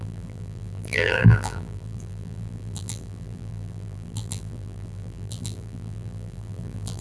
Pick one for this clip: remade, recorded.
remade